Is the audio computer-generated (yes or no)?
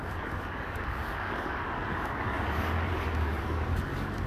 yes